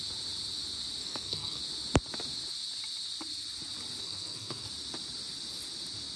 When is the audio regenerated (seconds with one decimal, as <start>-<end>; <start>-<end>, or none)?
1.0-1.6; 4.0-4.7